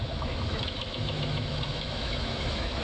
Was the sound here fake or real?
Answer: fake